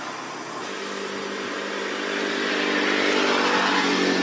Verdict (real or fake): real